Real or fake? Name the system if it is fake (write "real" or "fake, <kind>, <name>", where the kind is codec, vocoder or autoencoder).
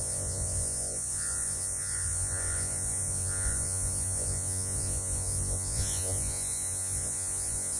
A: fake, vocoder, Vocos